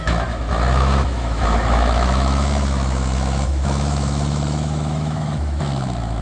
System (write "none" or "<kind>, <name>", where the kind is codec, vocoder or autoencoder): autoencoder, DAC-VAE